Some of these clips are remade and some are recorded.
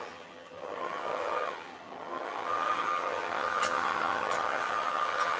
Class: remade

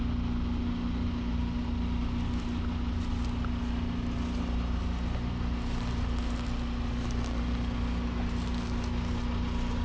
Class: recorded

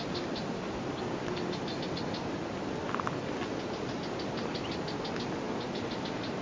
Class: recorded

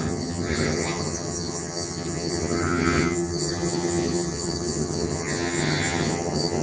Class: remade